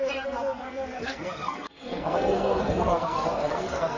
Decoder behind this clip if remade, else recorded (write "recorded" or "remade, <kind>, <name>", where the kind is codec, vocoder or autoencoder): remade, codec, SNAC